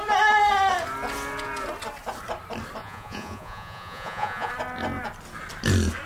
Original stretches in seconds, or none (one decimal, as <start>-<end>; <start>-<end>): 0.0-2.8; 4.5-6.1